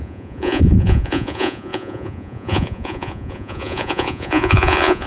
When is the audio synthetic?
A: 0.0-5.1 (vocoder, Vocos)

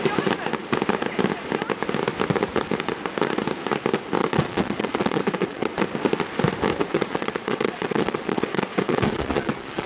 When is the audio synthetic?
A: 4.2-5.8 (vocoder, Vocos); 6.8-9.9

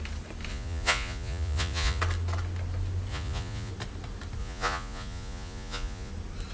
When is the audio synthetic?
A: 0.5-2.0 (vocoder, Vocos); 3.1-3.7; 4.4-6.1